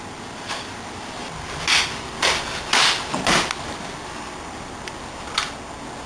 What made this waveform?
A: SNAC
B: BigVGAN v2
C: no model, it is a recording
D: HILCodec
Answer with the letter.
C